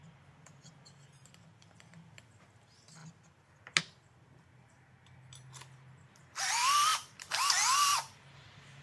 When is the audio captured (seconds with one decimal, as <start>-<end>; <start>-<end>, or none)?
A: 0.0-8.8